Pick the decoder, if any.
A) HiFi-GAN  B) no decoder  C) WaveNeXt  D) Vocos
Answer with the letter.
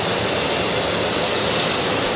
B